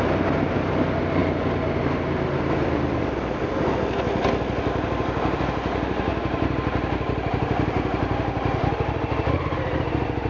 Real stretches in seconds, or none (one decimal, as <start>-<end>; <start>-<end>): 0.0-10.3